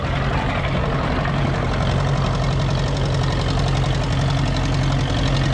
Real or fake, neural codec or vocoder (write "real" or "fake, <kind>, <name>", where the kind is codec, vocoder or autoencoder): real